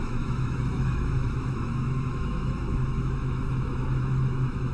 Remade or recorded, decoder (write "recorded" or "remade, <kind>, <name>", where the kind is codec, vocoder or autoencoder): remade, autoencoder, DAC-VAE